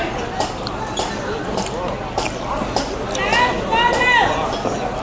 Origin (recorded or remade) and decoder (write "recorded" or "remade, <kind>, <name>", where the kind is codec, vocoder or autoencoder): recorded